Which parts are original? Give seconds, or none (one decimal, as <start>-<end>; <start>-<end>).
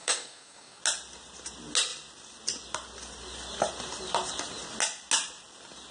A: 0.8-5.9